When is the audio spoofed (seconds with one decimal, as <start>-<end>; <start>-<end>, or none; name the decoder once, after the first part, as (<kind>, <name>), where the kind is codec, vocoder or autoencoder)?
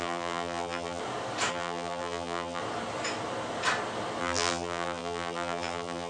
0.0-1.0 (vocoder, BigVGAN v2); 1.5-2.6; 4.2-6.1